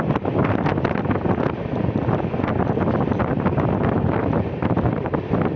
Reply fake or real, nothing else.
real